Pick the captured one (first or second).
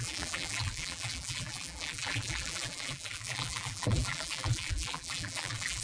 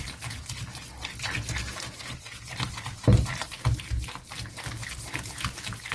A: second